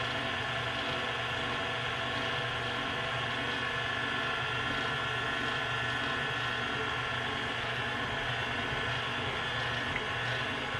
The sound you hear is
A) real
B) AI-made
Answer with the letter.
A